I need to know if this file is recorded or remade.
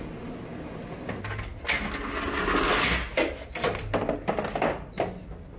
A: recorded